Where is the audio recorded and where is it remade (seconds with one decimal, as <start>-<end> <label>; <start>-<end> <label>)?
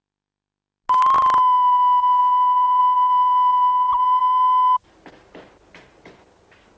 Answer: 0.0-6.8 recorded